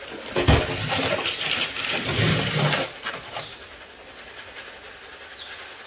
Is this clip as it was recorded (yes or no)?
yes